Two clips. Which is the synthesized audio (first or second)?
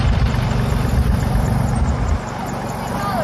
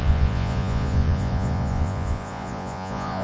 second